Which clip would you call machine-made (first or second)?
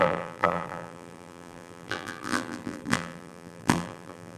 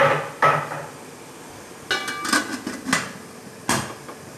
first